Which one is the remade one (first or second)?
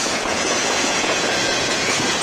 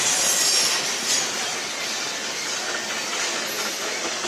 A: first